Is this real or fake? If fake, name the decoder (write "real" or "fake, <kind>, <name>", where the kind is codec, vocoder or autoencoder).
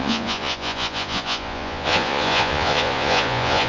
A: fake, vocoder, Vocos